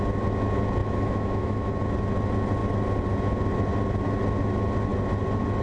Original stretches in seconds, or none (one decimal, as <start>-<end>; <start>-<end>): 0.0-0.8; 1.7-5.6